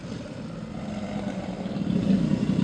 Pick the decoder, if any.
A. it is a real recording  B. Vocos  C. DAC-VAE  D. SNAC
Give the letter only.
A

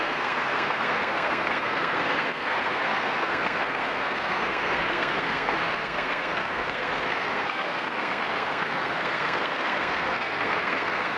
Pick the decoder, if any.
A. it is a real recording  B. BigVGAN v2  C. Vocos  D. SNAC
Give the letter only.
D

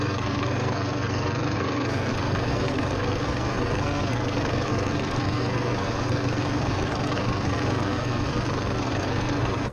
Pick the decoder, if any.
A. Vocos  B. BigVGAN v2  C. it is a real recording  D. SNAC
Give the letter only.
D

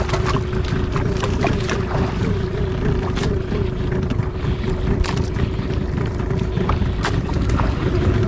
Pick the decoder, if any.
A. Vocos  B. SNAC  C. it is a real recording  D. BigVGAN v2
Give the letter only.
C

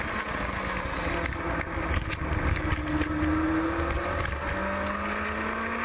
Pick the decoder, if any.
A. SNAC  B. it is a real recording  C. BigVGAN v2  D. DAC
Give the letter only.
B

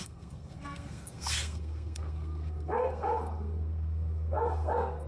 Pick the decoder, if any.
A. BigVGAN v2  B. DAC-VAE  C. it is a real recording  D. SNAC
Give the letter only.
D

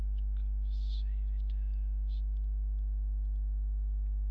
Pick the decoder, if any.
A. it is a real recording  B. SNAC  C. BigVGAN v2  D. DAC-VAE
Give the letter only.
A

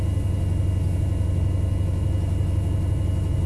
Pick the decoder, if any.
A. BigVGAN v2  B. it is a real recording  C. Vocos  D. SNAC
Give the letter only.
B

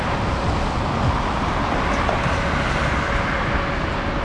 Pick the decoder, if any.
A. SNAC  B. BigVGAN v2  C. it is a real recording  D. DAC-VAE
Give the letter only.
C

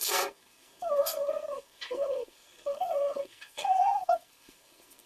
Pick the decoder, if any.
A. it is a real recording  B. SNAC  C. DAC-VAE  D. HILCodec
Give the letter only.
B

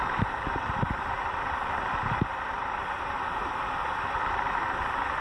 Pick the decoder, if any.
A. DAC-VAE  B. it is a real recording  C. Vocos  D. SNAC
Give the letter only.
B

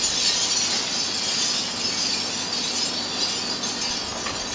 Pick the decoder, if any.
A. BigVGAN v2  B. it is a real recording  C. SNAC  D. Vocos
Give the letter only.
B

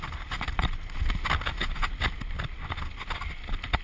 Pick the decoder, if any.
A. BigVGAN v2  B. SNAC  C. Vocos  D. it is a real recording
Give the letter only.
D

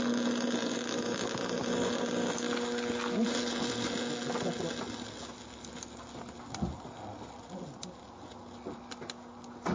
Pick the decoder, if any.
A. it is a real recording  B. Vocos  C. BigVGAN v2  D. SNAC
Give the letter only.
A